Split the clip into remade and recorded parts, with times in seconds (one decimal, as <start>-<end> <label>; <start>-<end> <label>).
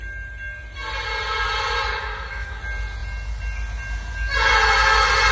0.0-1.9 recorded; 1.9-2.6 remade; 2.6-5.3 recorded